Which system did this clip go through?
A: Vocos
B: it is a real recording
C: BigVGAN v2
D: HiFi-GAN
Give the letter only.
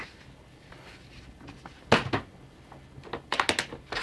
B